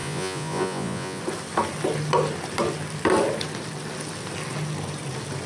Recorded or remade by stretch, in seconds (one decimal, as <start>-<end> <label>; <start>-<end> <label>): 0.0-1.2 remade; 1.2-5.5 recorded